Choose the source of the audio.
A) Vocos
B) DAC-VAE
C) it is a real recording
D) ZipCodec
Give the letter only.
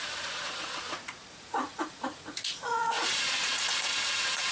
A